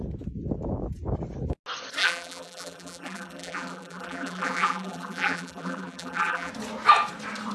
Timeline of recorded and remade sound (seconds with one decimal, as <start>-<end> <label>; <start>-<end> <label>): 0.0-2.0 recorded; 2.0-6.5 remade; 6.5-7.5 recorded